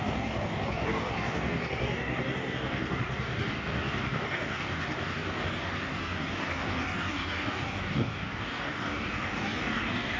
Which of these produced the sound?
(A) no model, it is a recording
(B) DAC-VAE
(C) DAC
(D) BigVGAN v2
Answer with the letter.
C